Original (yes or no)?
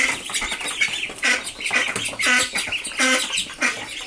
yes